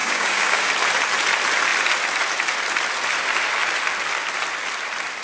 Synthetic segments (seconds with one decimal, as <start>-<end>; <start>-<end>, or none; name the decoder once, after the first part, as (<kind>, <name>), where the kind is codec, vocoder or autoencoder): 0.0-0.7 (codec, DAC)